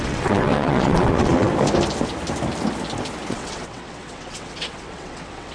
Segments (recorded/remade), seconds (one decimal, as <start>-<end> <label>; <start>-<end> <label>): 0.0-1.5 remade; 1.5-3.3 recorded; 3.3-5.5 remade